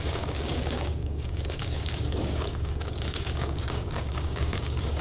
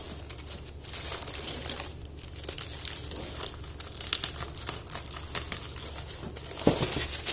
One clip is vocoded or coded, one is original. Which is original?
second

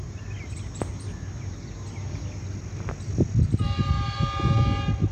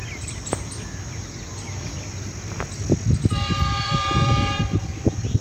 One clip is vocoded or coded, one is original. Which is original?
first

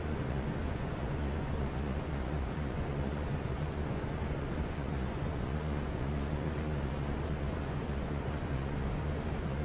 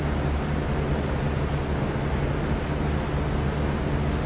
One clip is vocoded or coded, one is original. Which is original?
second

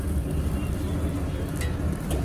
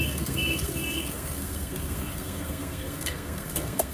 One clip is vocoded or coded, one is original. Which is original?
first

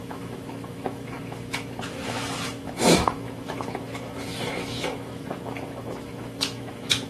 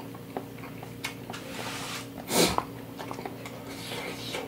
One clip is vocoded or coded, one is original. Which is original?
second